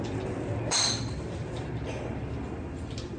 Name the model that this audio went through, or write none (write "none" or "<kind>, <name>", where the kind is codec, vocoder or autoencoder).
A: none